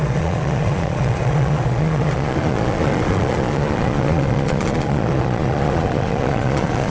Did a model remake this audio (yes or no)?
yes